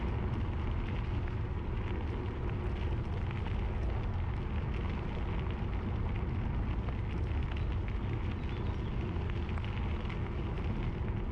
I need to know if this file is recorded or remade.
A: recorded